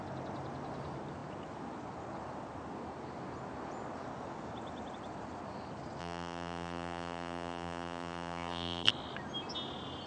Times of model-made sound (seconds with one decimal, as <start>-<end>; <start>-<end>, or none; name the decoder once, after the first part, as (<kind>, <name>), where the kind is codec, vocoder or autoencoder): 6.0-8.9 (vocoder, BigVGAN v2)